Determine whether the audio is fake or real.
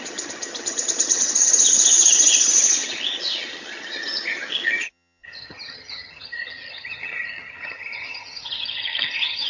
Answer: fake